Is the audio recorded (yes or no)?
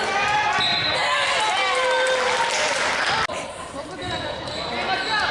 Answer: yes